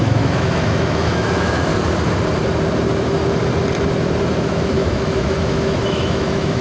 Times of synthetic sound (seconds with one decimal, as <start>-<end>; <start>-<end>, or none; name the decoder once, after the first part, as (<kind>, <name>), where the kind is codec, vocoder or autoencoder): 0.0-1.7 (autoencoder, DAC-VAE); 4.4-6.6